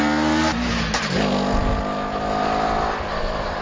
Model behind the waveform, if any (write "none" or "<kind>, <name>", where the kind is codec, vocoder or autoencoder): none